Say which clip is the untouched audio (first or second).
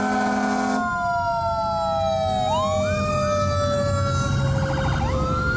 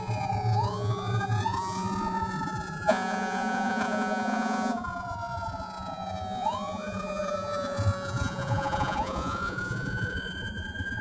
first